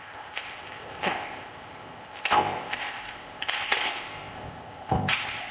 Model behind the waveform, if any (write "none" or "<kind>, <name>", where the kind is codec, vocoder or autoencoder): codec, ZipCodec